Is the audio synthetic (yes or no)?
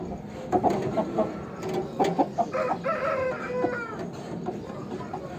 no